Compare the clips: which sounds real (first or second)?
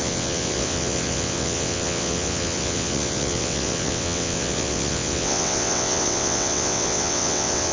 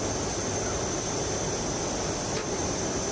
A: second